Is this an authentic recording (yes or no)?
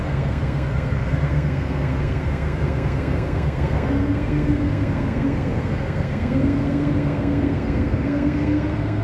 no